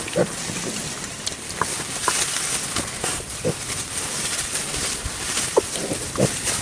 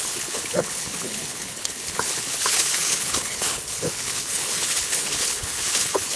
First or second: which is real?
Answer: first